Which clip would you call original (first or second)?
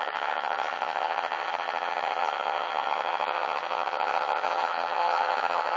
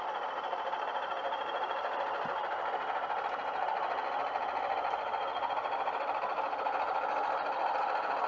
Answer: second